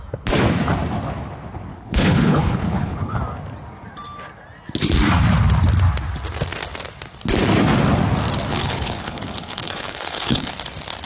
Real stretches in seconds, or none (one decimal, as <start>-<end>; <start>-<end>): 0.0-1.7; 3.2-8.5; 10.5-11.1